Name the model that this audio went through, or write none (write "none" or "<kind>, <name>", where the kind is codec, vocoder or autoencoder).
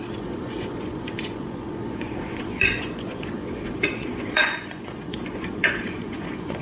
vocoder, Vocos